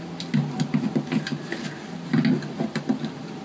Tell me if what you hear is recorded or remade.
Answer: recorded